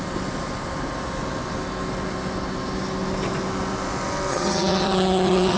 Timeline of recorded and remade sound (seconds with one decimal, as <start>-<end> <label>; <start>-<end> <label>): 0.0-4.3 recorded; 4.3-5.6 remade